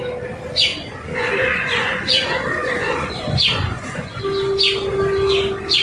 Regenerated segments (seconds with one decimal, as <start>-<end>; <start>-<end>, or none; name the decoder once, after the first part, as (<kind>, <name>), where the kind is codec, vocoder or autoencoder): 0.7-4.2 (vocoder, Vocos)